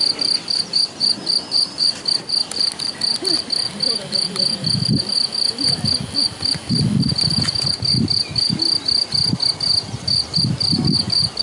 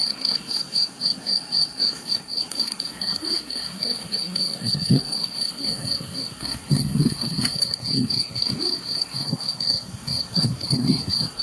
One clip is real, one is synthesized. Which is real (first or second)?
first